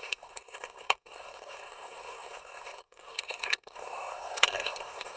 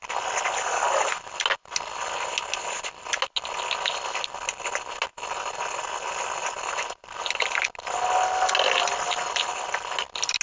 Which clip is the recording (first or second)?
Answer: second